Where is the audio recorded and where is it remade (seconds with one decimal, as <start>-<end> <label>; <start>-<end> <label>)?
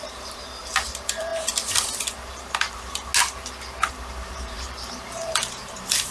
0.0-1.3 remade; 1.3-2.2 recorded; 2.2-3.1 remade; 3.1-3.9 recorded; 3.9-6.1 remade